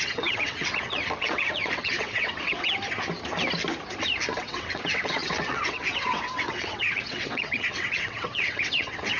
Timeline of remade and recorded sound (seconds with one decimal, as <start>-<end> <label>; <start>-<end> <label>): 0.0-2.8 remade; 2.8-4.4 recorded; 4.4-9.2 remade